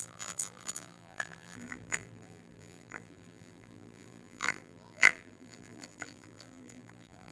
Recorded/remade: remade